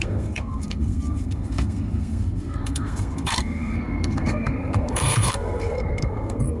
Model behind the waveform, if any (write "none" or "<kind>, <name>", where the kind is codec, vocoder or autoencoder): codec, SNAC